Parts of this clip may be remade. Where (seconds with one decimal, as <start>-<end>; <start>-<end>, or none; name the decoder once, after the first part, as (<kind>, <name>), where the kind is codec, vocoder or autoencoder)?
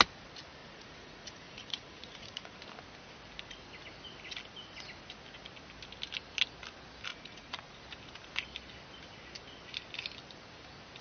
0.6-2.6 (vocoder, Vocos); 7.1-7.8